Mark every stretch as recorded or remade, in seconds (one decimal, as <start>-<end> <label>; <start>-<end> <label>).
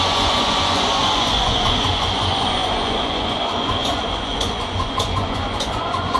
0.0-6.2 remade